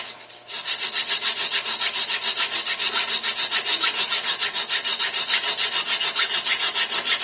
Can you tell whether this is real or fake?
real